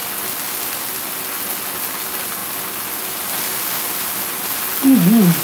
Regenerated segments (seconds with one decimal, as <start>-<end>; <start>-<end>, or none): 2.4-4.6